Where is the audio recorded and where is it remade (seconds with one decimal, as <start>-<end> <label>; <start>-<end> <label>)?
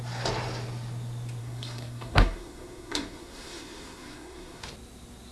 0.0-1.4 recorded; 1.4-4.6 remade; 4.6-5.3 recorded